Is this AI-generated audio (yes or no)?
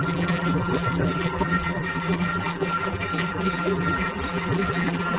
yes